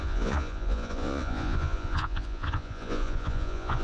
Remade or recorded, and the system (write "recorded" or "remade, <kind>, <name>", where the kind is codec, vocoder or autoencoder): remade, vocoder, Vocos